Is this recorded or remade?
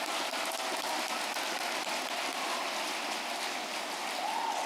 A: recorded